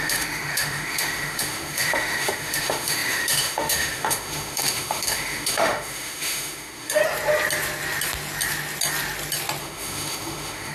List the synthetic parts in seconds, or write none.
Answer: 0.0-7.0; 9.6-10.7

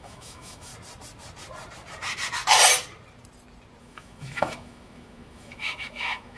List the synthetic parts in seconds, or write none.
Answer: 0.0-0.7; 3.8-6.4